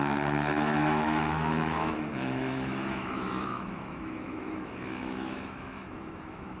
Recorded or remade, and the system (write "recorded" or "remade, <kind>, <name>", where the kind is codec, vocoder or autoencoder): remade, autoencoder, DAC-VAE